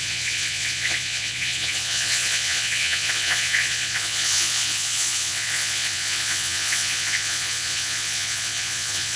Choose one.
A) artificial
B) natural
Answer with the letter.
A